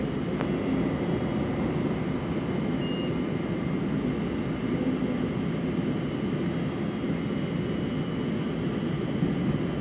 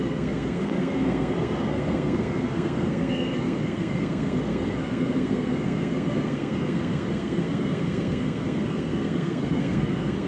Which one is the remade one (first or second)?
second